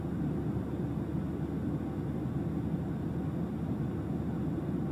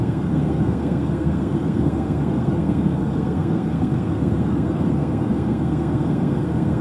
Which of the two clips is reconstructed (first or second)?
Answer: second